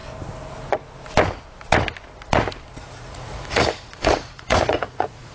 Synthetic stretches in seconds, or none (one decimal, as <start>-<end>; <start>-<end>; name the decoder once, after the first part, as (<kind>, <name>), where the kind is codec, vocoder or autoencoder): 2.8-5.3 (vocoder, Vocos)